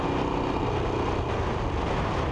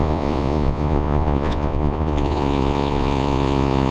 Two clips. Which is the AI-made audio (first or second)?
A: second